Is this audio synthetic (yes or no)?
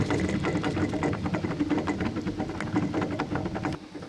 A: no